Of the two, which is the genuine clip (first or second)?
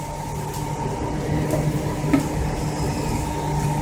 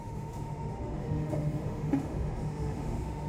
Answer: first